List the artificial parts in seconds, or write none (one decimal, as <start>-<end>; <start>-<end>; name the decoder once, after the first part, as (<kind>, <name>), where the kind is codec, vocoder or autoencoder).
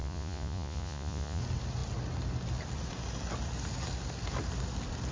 0.0-1.4 (vocoder, Vocos)